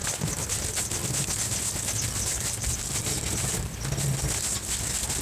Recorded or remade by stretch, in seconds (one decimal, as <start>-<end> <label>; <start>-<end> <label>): 0.0-2.3 recorded; 2.3-3.7 remade; 3.7-5.2 recorded